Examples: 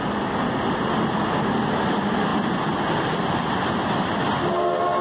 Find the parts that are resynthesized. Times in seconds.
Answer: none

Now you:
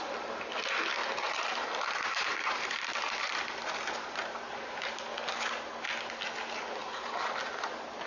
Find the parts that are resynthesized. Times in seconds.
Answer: 1.0-5.0 (vocoder, BigVGAN v2); 6.8-7.4